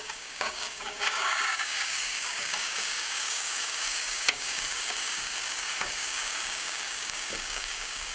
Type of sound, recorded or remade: remade